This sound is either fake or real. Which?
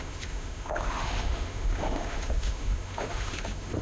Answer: fake